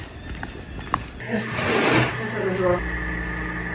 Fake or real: real